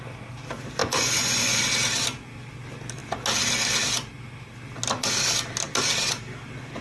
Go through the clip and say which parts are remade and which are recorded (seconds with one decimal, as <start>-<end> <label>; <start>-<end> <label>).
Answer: 0.0-0.8 recorded; 0.8-1.7 remade; 1.7-6.8 recorded